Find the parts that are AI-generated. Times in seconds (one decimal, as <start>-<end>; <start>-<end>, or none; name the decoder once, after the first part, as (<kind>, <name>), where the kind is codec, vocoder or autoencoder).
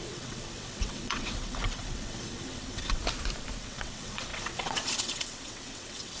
0.0-3.0 (vocoder, WaveNeXt); 3.6-6.2